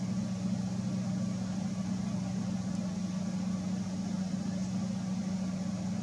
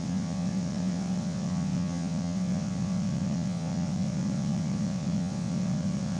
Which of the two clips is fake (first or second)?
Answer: second